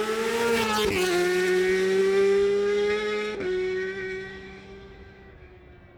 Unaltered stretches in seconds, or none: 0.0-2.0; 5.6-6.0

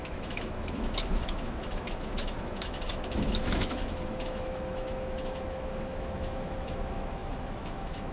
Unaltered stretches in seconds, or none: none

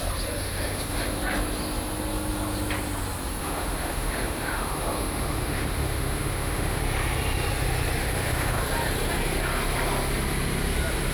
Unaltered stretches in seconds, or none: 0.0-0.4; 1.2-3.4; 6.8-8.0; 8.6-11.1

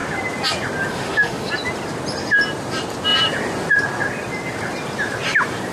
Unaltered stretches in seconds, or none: 0.0-0.9; 1.5-5.7

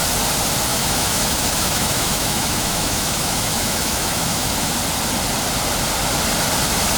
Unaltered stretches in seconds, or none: 0.0-0.7; 4.7-7.0